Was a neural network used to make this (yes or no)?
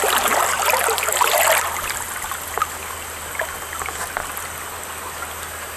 no